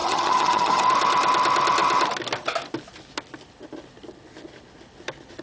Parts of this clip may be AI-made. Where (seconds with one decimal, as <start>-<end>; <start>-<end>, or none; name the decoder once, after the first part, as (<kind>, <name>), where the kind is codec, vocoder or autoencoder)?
0.0-0.8 (vocoder, HiFi-GAN)